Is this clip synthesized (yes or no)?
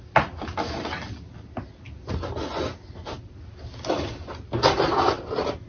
no